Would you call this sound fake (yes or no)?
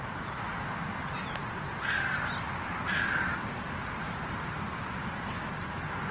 no